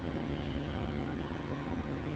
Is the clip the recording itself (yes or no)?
no